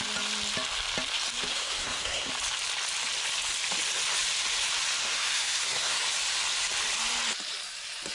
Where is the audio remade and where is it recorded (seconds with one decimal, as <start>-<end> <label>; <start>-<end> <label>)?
0.0-1.5 recorded; 1.5-2.3 remade; 2.3-5.0 recorded; 5.0-6.0 remade; 6.0-8.1 recorded